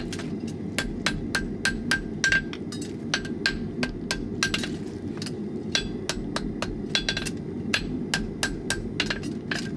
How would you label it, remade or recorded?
recorded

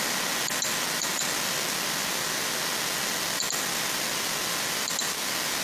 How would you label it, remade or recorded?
recorded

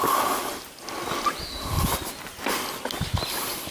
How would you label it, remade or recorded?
recorded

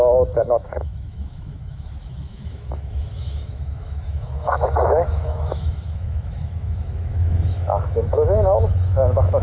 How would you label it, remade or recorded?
remade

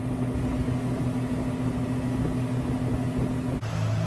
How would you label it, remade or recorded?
recorded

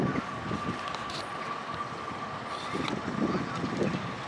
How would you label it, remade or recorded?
recorded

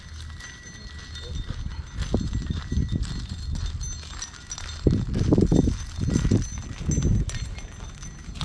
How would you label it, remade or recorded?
recorded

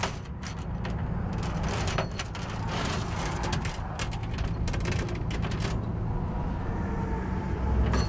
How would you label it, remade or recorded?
recorded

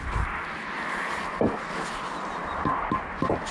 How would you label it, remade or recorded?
recorded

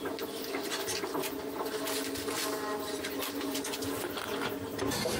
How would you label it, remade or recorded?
recorded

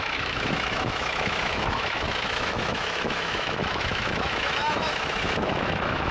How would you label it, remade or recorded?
remade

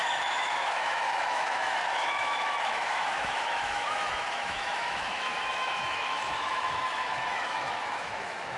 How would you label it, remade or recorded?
remade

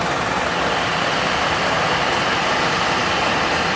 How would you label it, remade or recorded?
recorded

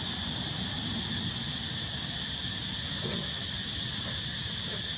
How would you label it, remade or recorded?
recorded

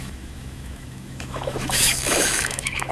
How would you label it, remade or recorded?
remade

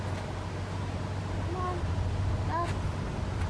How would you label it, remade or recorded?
recorded